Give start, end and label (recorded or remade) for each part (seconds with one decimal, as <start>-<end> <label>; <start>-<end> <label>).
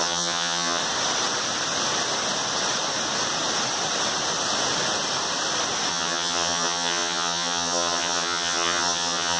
0.0-0.8 remade; 0.8-5.9 recorded; 5.9-9.4 remade